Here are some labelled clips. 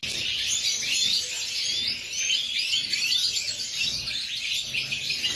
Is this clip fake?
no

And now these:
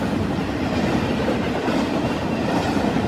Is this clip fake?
yes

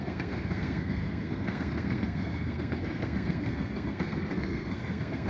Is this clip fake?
yes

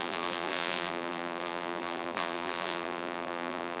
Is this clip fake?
yes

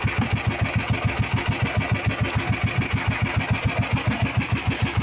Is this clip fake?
no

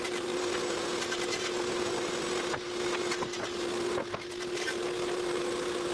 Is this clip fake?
no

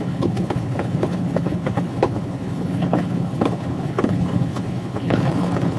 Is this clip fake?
yes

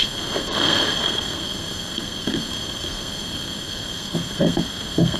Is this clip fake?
yes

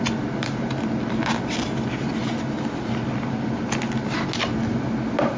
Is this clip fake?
no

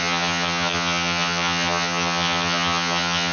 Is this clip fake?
yes